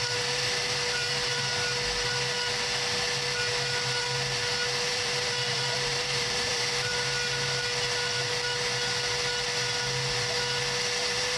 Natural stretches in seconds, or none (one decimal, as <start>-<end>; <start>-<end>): 1.5-4.9; 6.9-11.0